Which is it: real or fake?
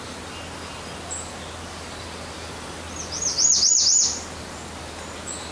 real